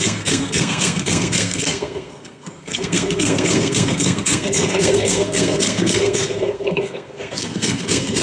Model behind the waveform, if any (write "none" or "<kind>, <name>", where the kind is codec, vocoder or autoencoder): codec, SNAC